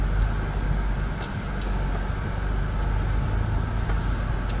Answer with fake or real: real